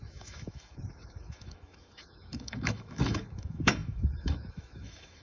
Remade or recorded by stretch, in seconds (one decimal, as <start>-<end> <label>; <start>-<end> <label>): 0.0-5.2 remade